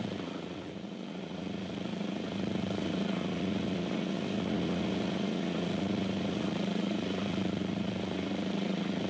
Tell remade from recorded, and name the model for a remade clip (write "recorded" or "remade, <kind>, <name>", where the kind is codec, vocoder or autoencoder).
remade, vocoder, Vocos